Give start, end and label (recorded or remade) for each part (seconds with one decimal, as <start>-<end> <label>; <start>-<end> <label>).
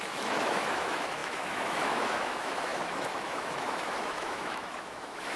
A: 0.0-5.4 remade